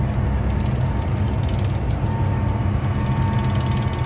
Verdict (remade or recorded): recorded